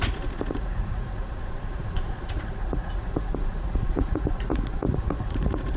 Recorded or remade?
remade